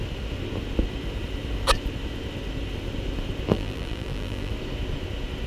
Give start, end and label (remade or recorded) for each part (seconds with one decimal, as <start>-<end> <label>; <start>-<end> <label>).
0.0-3.5 recorded; 3.5-4.5 remade; 4.5-5.5 recorded